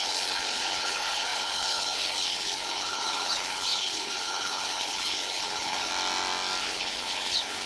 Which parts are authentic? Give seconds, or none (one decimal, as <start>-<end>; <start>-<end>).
5.9-6.6